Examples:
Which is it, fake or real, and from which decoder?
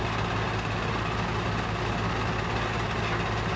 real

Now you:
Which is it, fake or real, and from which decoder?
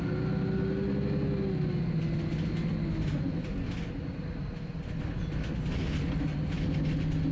real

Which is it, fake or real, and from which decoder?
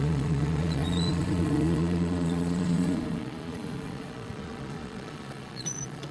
fake, vocoder, Vocos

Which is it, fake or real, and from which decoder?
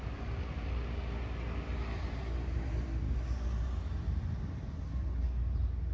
real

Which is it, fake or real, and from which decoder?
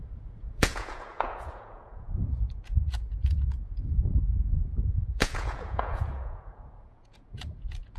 fake, vocoder, Vocos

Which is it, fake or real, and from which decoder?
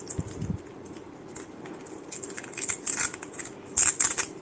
real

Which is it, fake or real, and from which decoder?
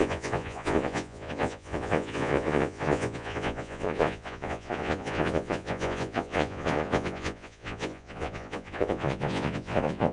fake, vocoder, Vocos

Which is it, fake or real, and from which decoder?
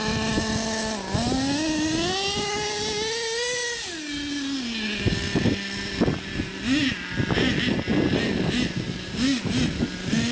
real